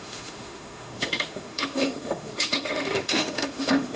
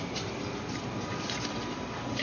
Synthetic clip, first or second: first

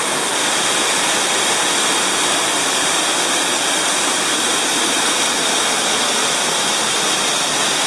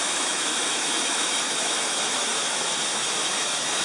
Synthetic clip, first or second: second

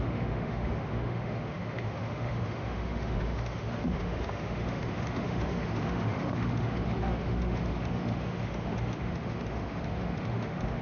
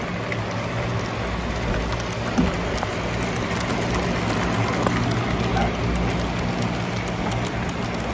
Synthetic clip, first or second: first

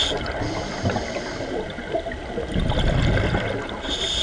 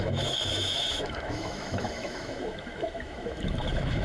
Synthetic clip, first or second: second